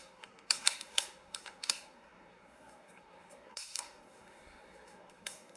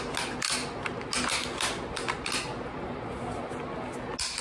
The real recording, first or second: second